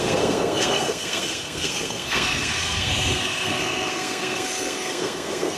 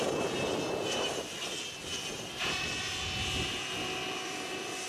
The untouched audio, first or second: second